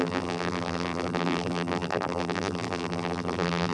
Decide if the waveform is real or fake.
fake